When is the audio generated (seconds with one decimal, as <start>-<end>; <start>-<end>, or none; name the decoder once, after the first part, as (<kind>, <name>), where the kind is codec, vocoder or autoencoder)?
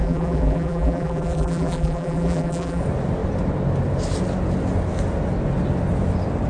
0.0-2.8 (vocoder, BigVGAN v2)